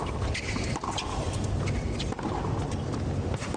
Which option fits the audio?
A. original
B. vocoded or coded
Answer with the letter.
A